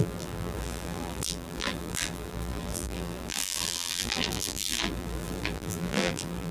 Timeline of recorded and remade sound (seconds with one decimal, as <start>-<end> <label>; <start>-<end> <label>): 0.0-6.5 remade